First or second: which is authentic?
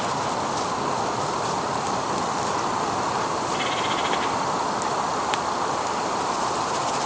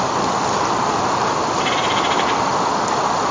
second